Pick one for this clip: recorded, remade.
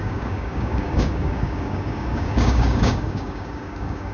remade